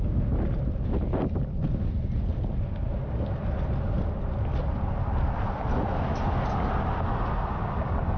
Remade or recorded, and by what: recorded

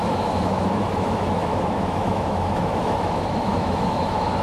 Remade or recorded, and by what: remade, autoencoder, DAC-VAE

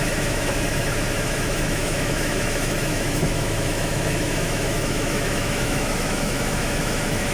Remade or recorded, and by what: remade, autoencoder, DAC-VAE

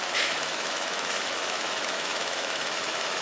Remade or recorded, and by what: remade, autoencoder, DAC-VAE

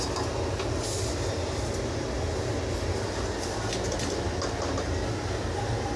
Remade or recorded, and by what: recorded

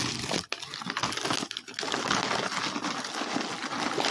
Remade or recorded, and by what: recorded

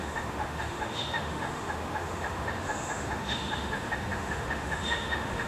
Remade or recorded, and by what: remade, autoencoder, DAC-VAE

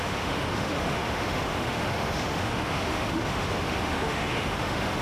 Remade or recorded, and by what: remade, autoencoder, DAC-VAE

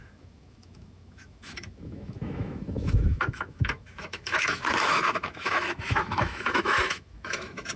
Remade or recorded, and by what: remade, autoencoder, DAC-VAE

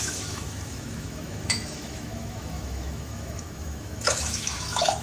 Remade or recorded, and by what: remade, autoencoder, DAC-VAE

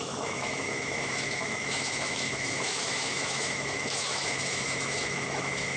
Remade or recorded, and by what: remade, autoencoder, DAC-VAE